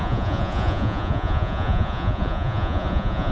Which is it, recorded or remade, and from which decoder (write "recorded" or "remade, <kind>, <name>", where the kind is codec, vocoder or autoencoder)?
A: remade, vocoder, Vocos